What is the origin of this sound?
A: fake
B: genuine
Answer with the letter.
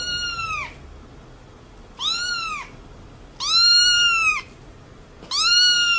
B